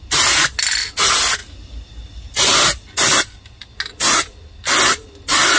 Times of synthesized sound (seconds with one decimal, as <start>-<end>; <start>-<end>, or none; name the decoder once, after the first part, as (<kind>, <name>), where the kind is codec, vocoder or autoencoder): none